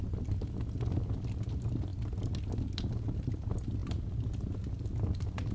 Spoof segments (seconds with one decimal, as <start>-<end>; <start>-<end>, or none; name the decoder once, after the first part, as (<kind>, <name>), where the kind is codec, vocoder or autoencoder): none